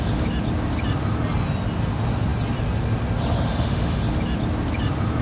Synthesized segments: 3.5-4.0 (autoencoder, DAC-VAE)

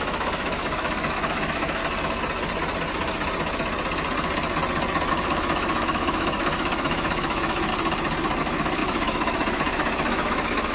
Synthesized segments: 0.0-1.8 (autoencoder, DAC-VAE); 5.1-7.7; 8.4-10.7

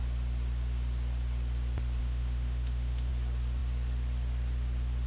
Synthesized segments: 2.0-3.1 (autoencoder, DAC-VAE)

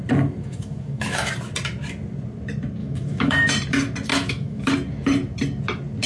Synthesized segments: 0.4-1.3 (autoencoder, DAC-VAE); 2.8-3.5; 4.1-4.7

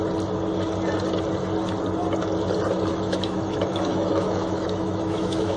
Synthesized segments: 2.9-5.6 (autoencoder, DAC-VAE)

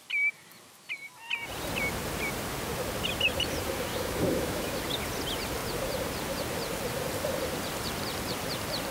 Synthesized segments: 3.9-4.8 (autoencoder, DAC-VAE)

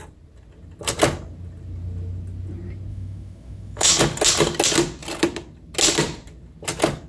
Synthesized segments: 2.9-4.0 (autoencoder, DAC-VAE)